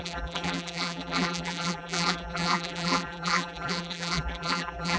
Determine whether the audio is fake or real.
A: fake